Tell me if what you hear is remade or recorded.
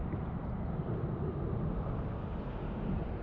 recorded